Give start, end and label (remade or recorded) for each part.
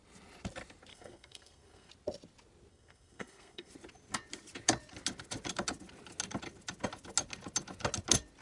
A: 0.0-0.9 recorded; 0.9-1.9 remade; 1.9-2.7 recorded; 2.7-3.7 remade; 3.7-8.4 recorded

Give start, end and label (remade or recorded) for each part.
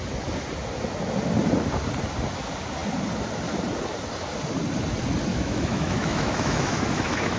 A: 0.0-5.3 recorded; 5.3-7.4 remade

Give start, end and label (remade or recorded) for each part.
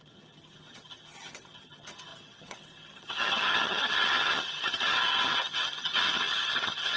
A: 0.0-7.0 remade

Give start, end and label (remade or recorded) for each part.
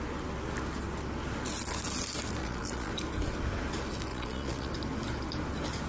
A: 0.0-2.4 recorded; 2.4-2.9 remade; 2.9-4.1 recorded; 4.1-4.7 remade; 4.7-5.9 recorded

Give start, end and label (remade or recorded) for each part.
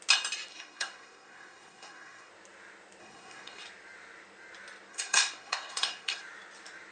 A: 0.0-0.5 recorded; 0.5-2.3 remade; 2.3-3.0 recorded; 3.0-3.6 remade; 3.6-4.9 recorded; 4.9-6.2 remade; 6.2-6.9 recorded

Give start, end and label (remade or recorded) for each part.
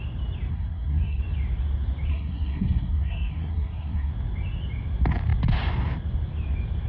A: 0.0-0.5 recorded; 0.5-1.2 remade; 1.2-2.1 recorded; 2.1-4.1 remade; 4.1-6.9 recorded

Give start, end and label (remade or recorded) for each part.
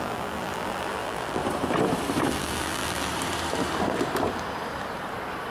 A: 0.0-1.4 remade; 1.4-2.3 recorded; 2.3-3.1 remade; 3.1-5.5 recorded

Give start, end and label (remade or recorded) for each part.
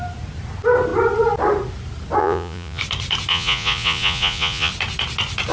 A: 0.0-2.2 recorded; 2.2-2.8 remade; 2.8-3.3 recorded; 3.3-4.7 remade; 4.7-5.5 recorded